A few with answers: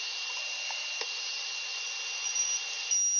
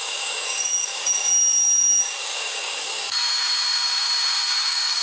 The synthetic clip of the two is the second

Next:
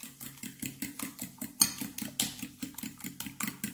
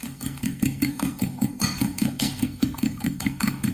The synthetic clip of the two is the second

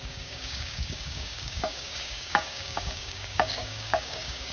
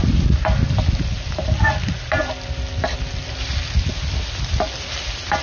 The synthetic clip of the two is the first